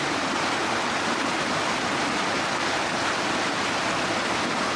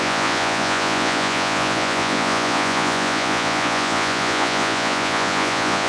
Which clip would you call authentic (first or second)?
first